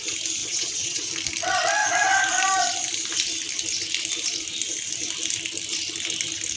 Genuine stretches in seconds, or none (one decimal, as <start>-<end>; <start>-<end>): 0.0-0.4; 1.1-6.6